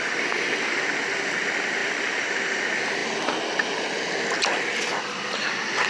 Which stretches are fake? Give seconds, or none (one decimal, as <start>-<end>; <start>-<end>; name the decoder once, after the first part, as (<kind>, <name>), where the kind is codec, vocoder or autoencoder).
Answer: 1.8-2.6 (vocoder, BigVGAN v2)